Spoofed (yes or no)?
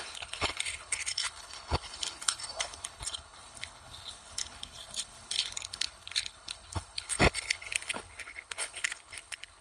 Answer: yes